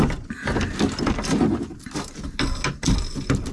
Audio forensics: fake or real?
real